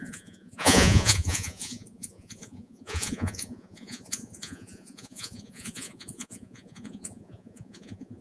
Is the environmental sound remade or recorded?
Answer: remade